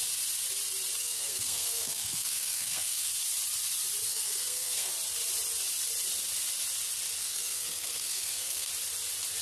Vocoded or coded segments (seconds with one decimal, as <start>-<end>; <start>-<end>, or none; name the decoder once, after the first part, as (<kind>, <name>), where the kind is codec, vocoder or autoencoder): 1.0-3.1 (codec, SNAC); 4.1-4.9; 7.2-8.7